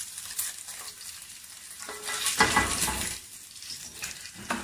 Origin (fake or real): real